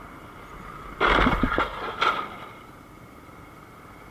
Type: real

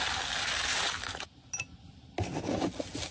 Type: real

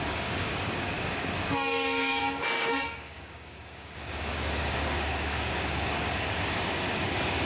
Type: fake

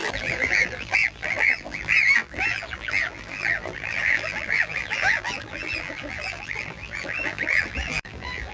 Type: fake